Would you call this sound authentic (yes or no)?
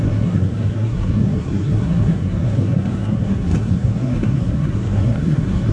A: no